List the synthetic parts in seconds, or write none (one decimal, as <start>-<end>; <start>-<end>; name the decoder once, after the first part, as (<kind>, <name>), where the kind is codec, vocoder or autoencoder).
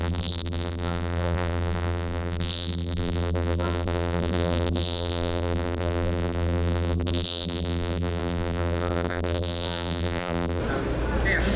0.0-10.6 (vocoder, BigVGAN v2)